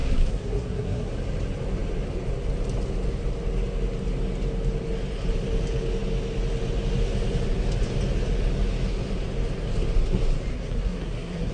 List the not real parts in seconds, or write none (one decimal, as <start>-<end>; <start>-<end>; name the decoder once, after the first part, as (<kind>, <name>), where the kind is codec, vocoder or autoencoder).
0.0-1.1 (codec, SNAC); 10.5-11.5